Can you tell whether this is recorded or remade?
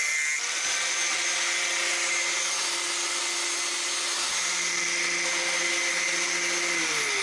recorded